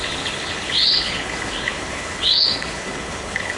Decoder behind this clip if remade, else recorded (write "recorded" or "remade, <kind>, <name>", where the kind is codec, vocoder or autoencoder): remade, codec, HILCodec